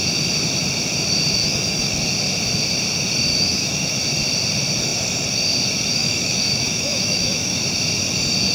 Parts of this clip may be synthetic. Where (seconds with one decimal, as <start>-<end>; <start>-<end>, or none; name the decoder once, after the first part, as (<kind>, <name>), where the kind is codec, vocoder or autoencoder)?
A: 1.4-1.9 (autoencoder, DAC-VAE); 3.3-4.0; 6.0-7.6